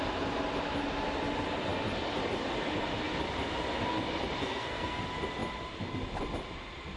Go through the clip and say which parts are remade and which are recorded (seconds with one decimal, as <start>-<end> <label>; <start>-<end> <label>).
0.0-4.4 recorded; 4.4-5.0 remade; 5.0-7.0 recorded